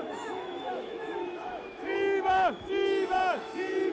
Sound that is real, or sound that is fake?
fake